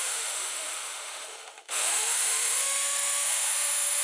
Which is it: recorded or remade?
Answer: remade